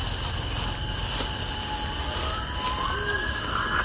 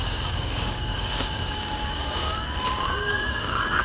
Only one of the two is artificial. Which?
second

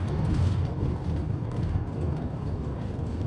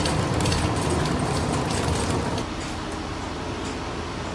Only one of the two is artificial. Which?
first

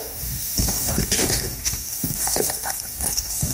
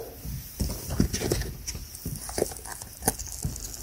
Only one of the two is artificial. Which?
first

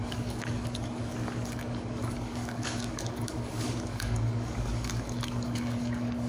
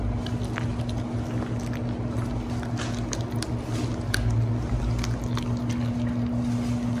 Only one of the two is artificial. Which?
first